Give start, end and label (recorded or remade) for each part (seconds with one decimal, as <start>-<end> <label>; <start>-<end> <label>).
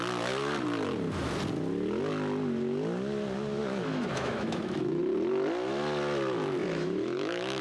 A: 0.0-3.6 recorded; 3.6-5.0 remade; 5.0-6.6 recorded; 6.6-7.6 remade